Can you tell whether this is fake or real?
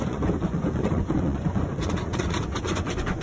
fake